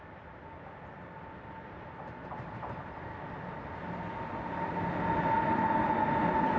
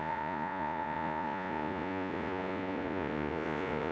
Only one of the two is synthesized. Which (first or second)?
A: second